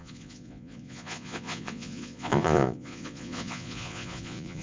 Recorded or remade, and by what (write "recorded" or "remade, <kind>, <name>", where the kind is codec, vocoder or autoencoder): remade, vocoder, Vocos